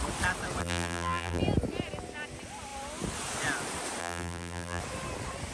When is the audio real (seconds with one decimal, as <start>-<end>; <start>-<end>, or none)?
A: 0.0-0.6; 1.4-4.0; 4.8-5.5